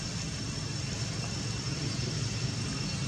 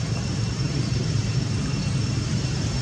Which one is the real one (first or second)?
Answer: first